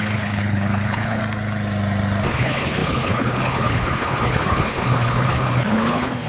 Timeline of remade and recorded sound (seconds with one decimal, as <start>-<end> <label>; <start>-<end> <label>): 0.0-1.2 remade; 1.2-2.3 recorded; 2.3-6.3 remade

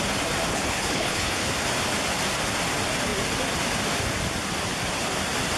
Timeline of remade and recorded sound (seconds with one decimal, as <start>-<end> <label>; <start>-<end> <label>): 0.0-0.5 recorded; 0.5-1.5 remade; 1.5-5.6 recorded